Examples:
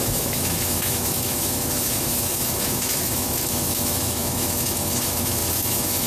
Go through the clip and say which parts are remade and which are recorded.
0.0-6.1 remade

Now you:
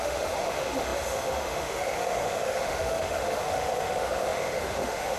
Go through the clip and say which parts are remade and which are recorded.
0.0-5.2 remade